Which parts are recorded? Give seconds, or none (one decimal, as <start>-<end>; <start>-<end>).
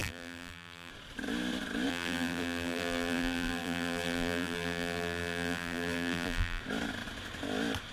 0.9-1.9; 6.6-7.9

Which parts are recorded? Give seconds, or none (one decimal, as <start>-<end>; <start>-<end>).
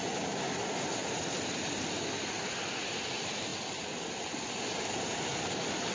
0.0-5.3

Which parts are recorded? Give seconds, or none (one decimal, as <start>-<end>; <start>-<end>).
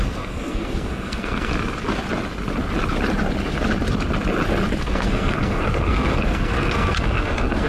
1.5-4.8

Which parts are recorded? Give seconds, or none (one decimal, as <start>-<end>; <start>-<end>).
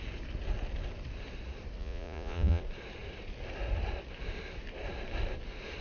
0.0-1.8; 2.6-5.8